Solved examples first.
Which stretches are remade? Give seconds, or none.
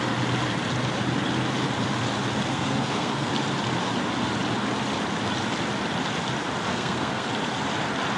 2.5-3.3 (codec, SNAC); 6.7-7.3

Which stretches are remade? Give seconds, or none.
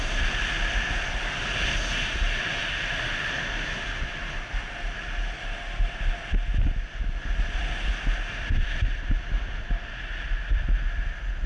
none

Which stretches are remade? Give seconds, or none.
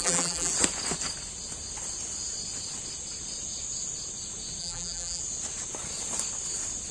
0.0-0.5 (vocoder, BigVGAN v2); 4.6-5.2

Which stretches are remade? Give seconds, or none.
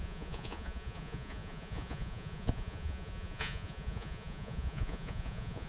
0.0-5.7 (vocoder, Vocos)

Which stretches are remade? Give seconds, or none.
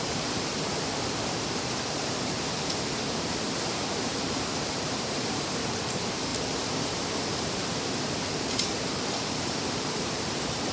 0.0-6.3 (vocoder, BigVGAN v2); 7.0-10.7